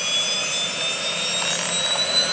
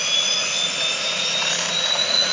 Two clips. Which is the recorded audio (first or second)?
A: first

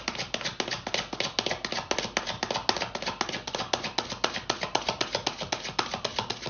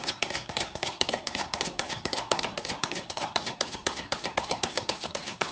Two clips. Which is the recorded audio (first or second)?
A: first